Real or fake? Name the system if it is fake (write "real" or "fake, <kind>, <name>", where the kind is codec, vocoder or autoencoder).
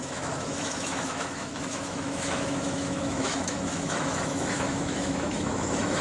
fake, autoencoder, DAC-VAE